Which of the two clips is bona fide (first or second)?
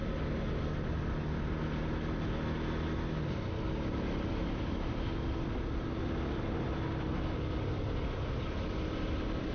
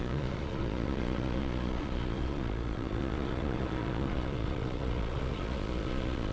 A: first